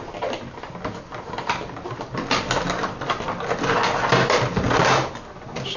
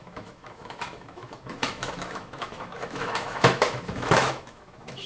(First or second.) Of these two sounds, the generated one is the second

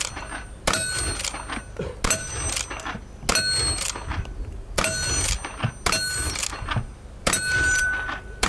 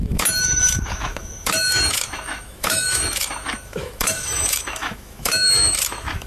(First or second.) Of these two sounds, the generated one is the second